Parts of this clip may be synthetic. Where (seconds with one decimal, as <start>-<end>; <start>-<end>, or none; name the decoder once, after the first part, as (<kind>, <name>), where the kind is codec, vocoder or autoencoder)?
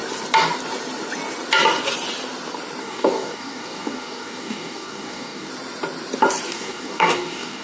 2.8-5.5 (codec, DAC); 6.5-7.6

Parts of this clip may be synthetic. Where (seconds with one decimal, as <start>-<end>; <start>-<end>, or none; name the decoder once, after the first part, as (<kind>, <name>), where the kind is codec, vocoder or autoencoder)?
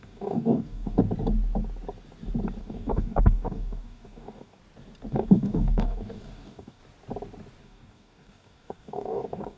0.0-1.0 (codec, DAC); 2.6-4.6; 5.1-6.8; 7.6-9.6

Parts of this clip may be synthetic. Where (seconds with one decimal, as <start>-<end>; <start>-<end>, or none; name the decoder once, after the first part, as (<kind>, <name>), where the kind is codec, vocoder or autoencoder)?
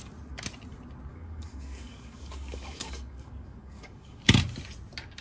1.1-4.2 (codec, DAC)